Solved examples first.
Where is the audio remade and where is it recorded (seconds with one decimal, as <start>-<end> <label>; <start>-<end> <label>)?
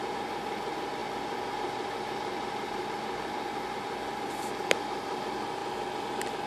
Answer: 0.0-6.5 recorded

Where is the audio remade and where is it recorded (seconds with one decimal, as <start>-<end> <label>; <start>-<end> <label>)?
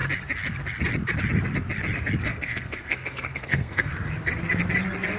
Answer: 0.0-2.3 recorded; 2.3-3.9 remade; 3.9-5.2 recorded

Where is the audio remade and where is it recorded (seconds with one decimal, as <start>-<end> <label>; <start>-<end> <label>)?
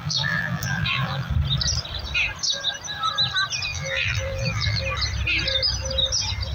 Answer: 0.0-1.3 remade; 1.3-3.7 recorded; 3.7-4.8 remade; 4.8-6.5 recorded